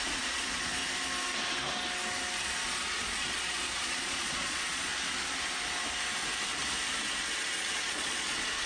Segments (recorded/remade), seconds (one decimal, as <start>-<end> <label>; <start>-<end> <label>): 0.0-0.8 remade; 0.8-2.4 recorded; 2.4-4.9 remade; 4.9-7.7 recorded; 7.7-8.7 remade

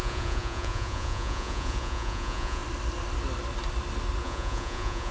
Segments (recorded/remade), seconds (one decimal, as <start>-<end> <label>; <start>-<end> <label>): 0.0-2.6 remade; 2.6-4.2 recorded; 4.2-5.1 remade

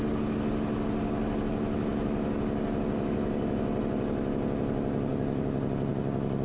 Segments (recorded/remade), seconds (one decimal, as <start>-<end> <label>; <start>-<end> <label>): 0.0-6.4 recorded

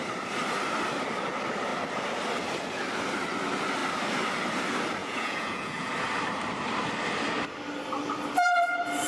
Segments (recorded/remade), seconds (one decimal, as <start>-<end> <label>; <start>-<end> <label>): 0.0-5.0 recorded; 5.0-5.9 remade; 5.9-9.1 recorded

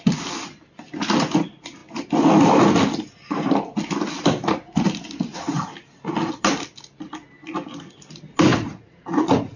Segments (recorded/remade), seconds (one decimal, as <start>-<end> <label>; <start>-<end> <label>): 0.0-8.5 recorded; 8.5-9.6 remade

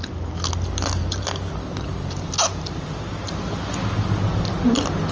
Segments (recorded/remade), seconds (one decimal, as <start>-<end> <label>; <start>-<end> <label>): 0.0-5.1 recorded